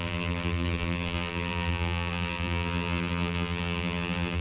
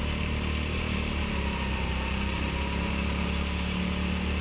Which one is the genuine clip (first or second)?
second